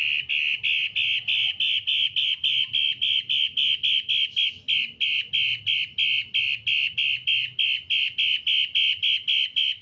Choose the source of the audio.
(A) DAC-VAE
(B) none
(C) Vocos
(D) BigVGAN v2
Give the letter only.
B